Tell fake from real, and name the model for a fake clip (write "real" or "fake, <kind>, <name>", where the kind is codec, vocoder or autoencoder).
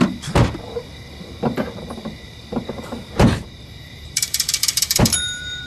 fake, vocoder, BigVGAN v2